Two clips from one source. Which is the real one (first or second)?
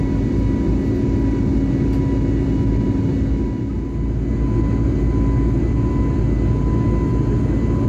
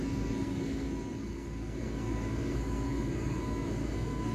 first